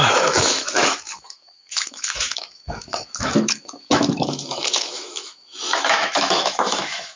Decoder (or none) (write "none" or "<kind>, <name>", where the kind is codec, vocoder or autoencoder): autoencoder, DAC-VAE